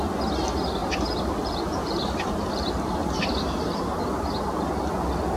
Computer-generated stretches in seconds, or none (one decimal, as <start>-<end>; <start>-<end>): 0.8-4.0